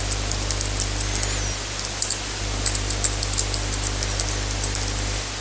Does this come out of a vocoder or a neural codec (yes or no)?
no